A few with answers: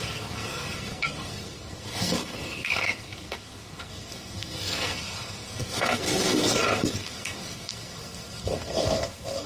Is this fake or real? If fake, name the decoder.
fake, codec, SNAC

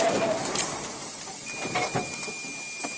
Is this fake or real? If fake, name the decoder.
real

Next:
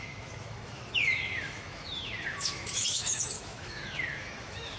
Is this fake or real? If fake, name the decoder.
fake, autoencoder, DAC-VAE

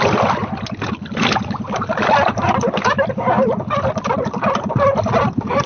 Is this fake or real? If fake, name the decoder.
real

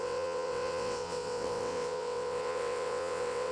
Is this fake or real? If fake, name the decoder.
fake, vocoder, WaveNeXt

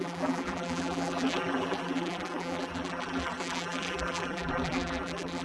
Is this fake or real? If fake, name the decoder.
fake, vocoder, BigVGAN v2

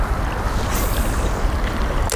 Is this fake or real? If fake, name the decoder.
real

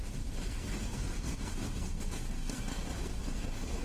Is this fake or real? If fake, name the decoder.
fake, codec, SNAC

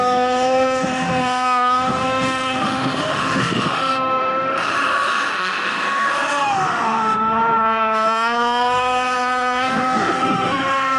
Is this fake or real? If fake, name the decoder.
fake, autoencoder, DAC-VAE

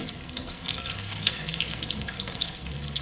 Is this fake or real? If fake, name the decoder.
fake, codec, SNAC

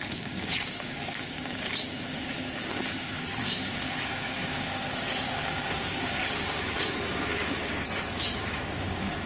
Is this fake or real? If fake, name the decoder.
fake, codec, DAC